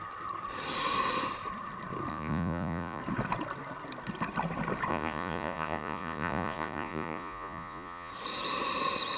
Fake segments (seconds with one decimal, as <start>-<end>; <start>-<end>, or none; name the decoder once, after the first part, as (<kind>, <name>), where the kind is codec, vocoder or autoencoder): 2.1-3.0 (vocoder, Vocos); 4.9-8.1